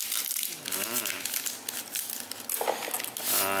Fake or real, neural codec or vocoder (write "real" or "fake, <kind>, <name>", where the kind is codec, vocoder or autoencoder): real